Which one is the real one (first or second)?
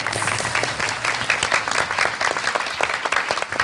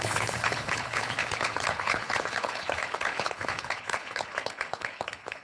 first